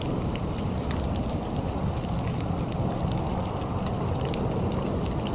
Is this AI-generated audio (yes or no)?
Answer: no